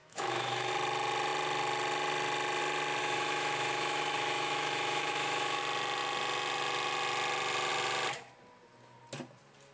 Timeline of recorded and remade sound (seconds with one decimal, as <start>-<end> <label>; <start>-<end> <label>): 0.0-0.7 remade; 0.7-3.0 recorded; 3.0-5.6 remade; 5.6-9.7 recorded